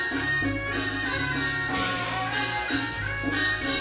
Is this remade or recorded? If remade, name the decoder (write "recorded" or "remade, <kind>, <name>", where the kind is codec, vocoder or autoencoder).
recorded